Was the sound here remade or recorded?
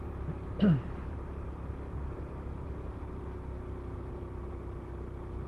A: recorded